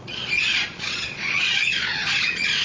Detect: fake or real fake